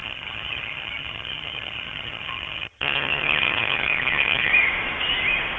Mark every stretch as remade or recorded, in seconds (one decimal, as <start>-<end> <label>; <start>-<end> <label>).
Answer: 0.0-4.5 remade; 4.5-5.6 recorded